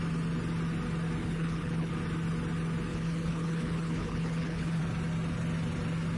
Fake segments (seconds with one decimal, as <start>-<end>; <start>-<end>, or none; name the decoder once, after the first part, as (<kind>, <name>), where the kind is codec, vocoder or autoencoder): 1.2-1.9 (codec, HILCodec); 2.9-4.8